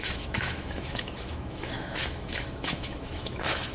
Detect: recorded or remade remade